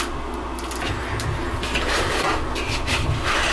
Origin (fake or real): real